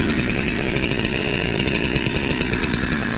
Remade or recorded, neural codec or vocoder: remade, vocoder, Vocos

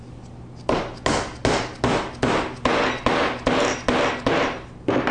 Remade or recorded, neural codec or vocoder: recorded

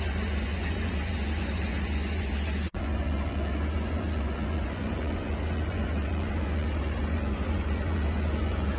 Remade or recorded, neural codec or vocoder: remade, vocoder, Vocos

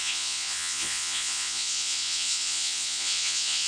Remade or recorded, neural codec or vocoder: remade, vocoder, Vocos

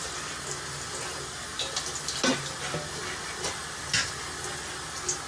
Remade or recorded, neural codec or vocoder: recorded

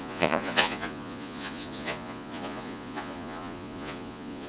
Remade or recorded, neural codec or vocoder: remade, vocoder, Vocos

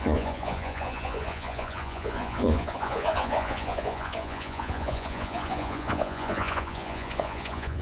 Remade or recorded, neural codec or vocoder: remade, vocoder, Vocos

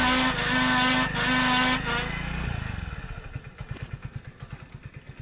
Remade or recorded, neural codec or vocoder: recorded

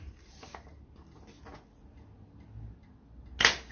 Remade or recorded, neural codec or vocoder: recorded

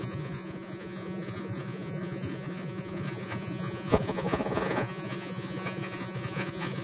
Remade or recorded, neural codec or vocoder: remade, vocoder, Vocos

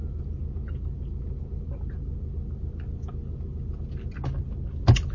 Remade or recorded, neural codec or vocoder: recorded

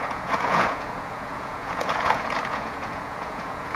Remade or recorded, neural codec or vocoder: remade, vocoder, Vocos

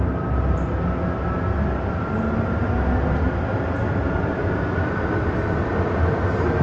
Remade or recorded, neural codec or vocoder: recorded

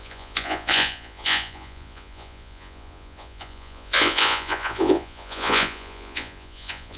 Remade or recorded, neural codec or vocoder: remade, vocoder, Vocos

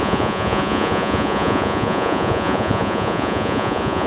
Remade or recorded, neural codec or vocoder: remade, vocoder, Vocos